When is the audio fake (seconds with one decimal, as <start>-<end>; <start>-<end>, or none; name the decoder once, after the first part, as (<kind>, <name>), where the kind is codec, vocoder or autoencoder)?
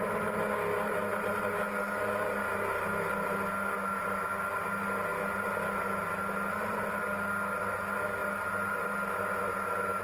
none